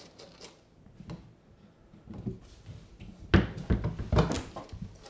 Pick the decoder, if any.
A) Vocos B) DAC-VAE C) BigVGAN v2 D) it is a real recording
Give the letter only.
D